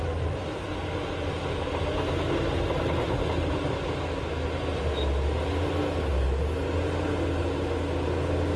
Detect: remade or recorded recorded